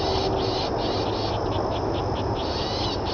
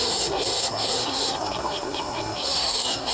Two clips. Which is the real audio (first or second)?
first